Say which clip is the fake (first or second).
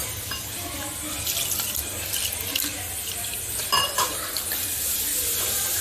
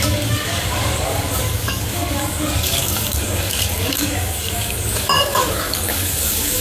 second